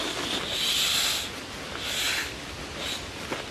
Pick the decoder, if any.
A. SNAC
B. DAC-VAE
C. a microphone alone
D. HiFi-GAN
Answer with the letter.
C